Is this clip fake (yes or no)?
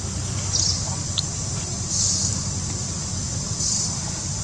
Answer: no